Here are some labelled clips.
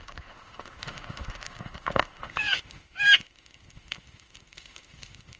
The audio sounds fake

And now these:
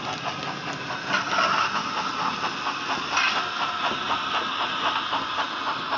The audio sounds real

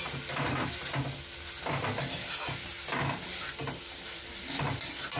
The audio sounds real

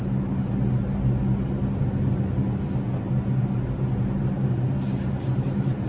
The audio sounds real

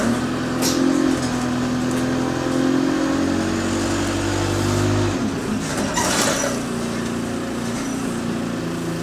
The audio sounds real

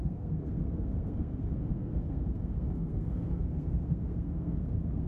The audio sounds fake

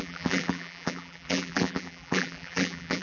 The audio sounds fake